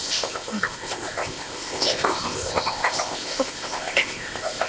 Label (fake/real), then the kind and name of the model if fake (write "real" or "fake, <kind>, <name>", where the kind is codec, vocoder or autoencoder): fake, codec, ZipCodec